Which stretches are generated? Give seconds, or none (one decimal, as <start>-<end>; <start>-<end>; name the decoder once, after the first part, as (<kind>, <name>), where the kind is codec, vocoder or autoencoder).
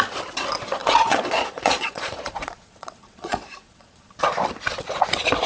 0.8-4.1 (vocoder, Vocos)